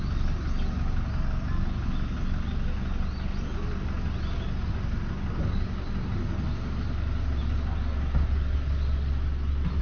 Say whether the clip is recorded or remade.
recorded